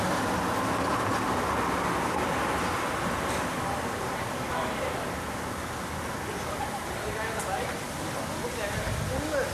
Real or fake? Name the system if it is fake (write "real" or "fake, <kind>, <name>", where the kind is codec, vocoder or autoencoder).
real